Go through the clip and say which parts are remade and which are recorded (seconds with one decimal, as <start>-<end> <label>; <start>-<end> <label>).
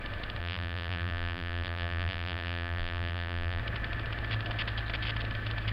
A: 0.0-0.4 recorded; 0.4-3.6 remade; 3.6-5.7 recorded